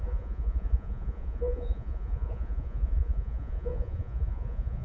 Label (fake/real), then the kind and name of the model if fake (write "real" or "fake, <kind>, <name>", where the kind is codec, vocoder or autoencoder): fake, vocoder, Vocos